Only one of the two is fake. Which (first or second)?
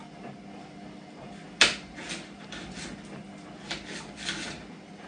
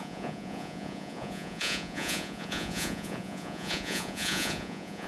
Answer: second